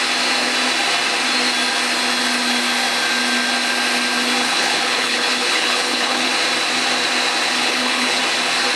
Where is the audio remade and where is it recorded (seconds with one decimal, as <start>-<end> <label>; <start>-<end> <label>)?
0.0-4.4 recorded; 4.4-6.3 remade; 6.3-7.6 recorded; 7.6-8.2 remade; 8.2-8.8 recorded